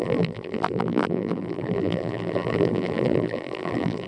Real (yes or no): no